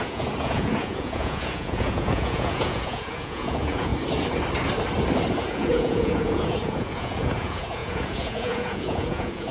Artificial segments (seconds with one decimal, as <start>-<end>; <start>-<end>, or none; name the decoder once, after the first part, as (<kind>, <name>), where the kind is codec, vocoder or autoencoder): 0.0-3.9 (vocoder, Vocos); 5.3-9.5